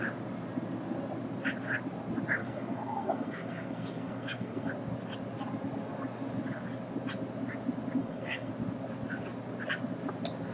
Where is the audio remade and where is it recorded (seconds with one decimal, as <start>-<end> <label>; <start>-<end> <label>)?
0.0-2.4 recorded; 2.4-4.7 remade; 4.7-8.0 recorded; 8.0-8.5 remade; 8.5-10.5 recorded